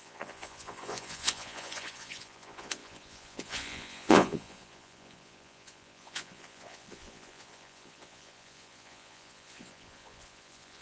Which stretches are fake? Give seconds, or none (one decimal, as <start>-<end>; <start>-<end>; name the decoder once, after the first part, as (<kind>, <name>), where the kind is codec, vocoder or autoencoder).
0.0-10.8 (vocoder, Vocos)